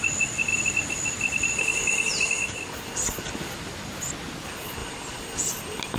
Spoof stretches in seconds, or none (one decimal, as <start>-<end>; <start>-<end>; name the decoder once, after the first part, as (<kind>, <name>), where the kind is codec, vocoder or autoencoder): 0.5-4.1 (vocoder, BigVGAN v2); 4.8-5.6